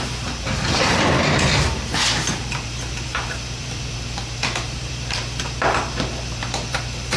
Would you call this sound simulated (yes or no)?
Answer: yes